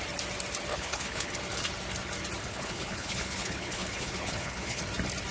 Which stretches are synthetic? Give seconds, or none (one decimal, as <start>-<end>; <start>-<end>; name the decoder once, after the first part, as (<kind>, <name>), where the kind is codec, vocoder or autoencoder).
0.7-1.3 (codec, HILCodec); 2.4-4.8